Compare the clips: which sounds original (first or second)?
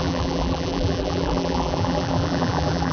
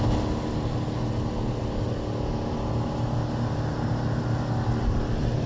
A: second